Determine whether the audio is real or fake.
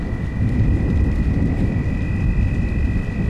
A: real